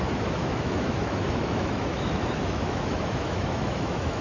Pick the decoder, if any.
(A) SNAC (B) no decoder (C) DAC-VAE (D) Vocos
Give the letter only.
C